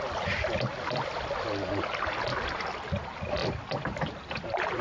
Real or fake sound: real